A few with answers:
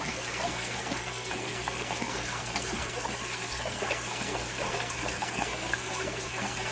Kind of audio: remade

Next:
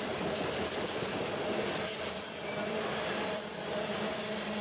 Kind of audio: recorded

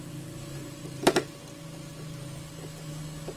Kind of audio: recorded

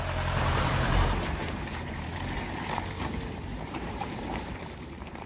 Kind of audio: remade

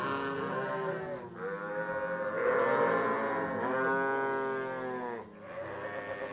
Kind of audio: recorded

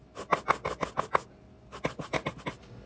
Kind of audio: recorded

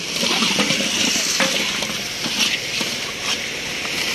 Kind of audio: remade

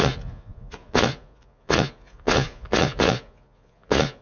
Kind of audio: remade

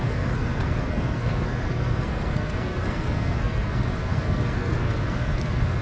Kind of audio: remade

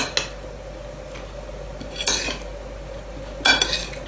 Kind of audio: recorded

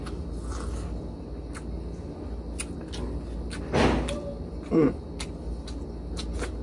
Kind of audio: recorded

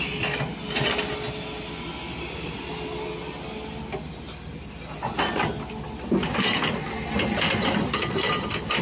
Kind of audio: recorded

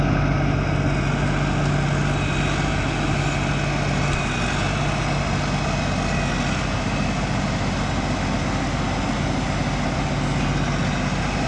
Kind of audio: recorded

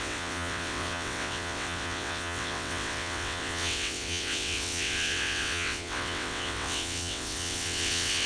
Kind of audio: remade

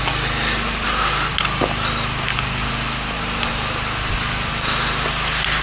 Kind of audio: recorded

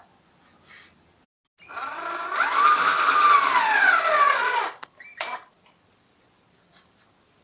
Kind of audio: recorded